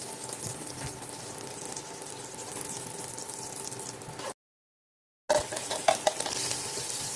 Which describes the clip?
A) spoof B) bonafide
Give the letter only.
B